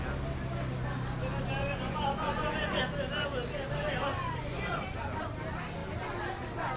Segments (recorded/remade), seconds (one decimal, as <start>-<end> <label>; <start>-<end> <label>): 0.0-1.6 recorded; 1.6-2.8 remade; 2.8-4.1 recorded; 4.1-4.8 remade; 4.8-6.8 recorded